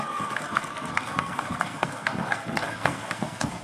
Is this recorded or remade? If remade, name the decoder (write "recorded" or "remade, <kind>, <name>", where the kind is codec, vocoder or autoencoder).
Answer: remade, codec, SNAC